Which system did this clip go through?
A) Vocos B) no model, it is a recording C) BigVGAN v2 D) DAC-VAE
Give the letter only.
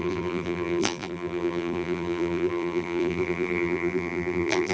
C